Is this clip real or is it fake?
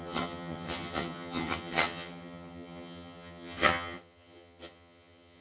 fake